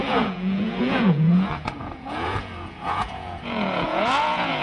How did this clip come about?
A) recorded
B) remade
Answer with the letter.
B